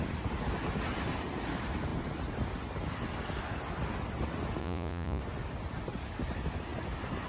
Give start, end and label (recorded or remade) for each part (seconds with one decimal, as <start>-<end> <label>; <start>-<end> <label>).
0.0-4.6 recorded; 4.6-5.2 remade; 5.2-7.3 recorded